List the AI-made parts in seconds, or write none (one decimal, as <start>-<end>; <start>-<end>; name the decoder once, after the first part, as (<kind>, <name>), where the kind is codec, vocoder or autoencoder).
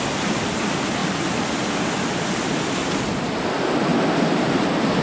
none